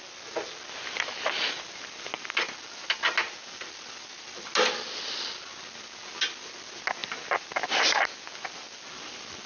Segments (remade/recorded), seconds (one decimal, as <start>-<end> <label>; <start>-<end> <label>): 0.0-9.5 recorded

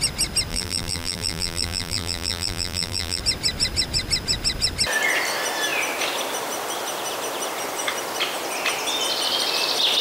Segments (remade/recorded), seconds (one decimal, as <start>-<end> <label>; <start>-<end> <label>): 0.0-0.5 recorded; 0.5-3.2 remade; 3.2-10.0 recorded